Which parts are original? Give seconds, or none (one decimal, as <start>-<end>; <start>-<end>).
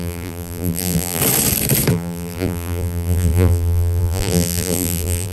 1.2-1.9